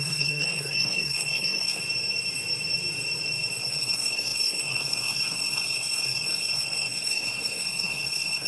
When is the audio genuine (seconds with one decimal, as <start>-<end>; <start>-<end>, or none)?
1.8-3.6